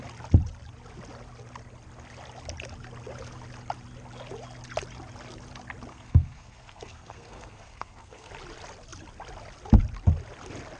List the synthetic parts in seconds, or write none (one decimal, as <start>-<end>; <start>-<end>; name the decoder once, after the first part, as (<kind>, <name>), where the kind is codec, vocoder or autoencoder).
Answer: 5.9-8.3 (codec, SNAC)